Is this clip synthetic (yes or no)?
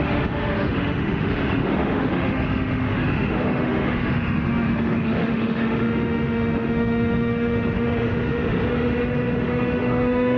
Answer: yes